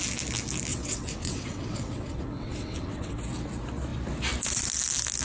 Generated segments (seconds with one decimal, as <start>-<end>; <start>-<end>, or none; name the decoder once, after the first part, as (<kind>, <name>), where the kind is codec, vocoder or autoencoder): 0.7-3.2 (vocoder, WaveNeXt)